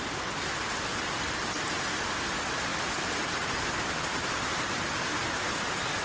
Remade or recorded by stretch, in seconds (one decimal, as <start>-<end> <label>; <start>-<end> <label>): 0.0-6.0 recorded